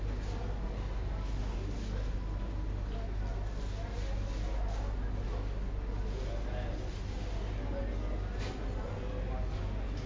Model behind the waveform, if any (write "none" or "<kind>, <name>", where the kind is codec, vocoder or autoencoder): none